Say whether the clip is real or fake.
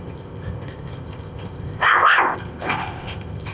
fake